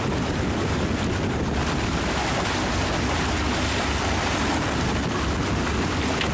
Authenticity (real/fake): real